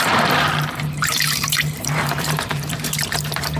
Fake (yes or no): yes